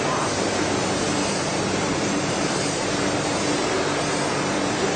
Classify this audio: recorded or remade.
remade